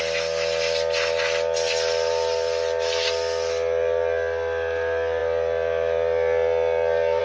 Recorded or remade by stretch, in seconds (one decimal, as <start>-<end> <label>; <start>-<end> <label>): 0.0-7.2 recorded